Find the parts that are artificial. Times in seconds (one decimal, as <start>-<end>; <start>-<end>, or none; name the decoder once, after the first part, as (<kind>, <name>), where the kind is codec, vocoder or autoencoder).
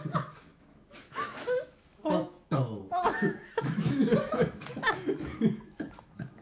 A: 0.0-6.4 (autoencoder, DAC-VAE)